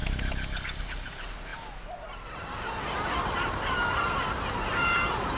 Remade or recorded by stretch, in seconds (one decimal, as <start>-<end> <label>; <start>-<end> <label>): 0.0-5.4 recorded